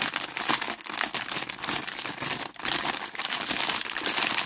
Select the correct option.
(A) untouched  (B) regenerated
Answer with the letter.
A